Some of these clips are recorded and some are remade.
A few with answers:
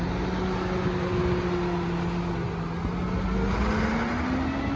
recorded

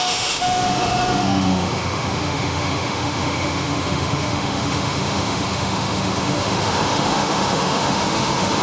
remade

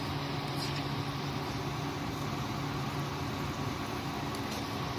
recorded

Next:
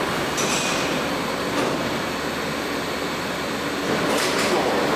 recorded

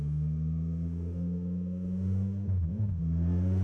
remade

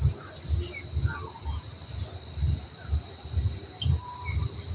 recorded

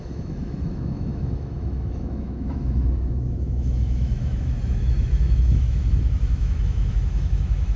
remade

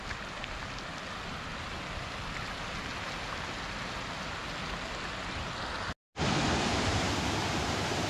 recorded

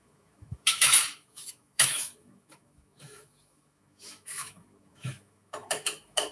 remade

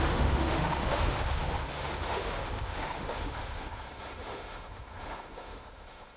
remade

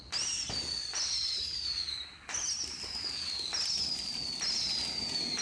recorded